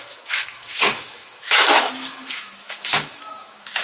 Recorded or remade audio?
remade